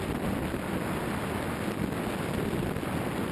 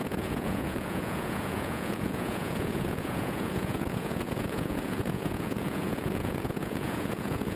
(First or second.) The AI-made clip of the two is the second